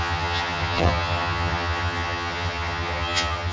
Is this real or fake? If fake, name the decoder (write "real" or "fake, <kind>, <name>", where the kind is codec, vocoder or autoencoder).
fake, vocoder, HiFi-GAN